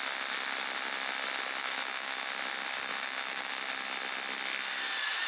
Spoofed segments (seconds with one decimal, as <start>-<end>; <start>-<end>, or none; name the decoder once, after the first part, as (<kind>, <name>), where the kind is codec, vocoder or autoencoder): 1.6-2.2 (autoencoder, DAC-VAE); 2.9-3.5